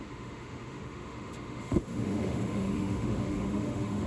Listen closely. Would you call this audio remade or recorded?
remade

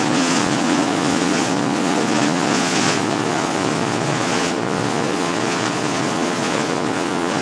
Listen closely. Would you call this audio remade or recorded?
remade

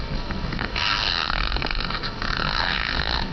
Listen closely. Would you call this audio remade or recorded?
remade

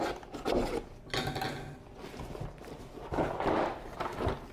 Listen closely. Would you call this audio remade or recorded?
recorded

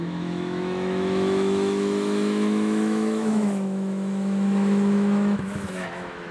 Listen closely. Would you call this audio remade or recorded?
remade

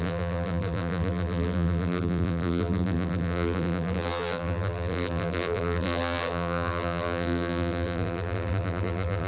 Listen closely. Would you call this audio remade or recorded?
remade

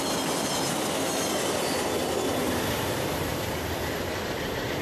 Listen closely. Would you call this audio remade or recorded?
recorded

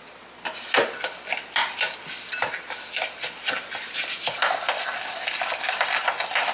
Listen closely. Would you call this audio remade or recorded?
recorded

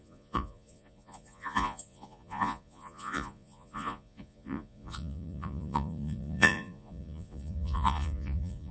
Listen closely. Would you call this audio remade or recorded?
remade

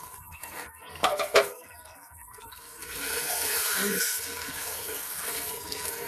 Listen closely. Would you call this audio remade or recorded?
remade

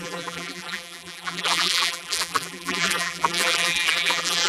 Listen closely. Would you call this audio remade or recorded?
remade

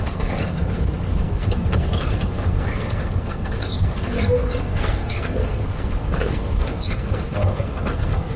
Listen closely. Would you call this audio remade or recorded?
remade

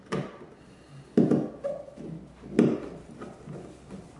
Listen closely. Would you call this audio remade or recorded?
recorded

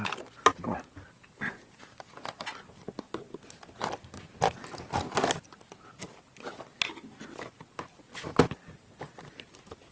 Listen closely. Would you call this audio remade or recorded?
recorded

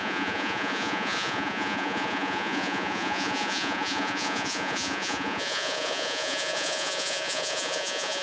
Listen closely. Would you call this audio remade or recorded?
remade